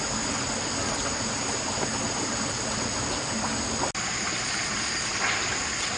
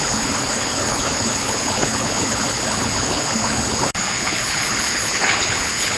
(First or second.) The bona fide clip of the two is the first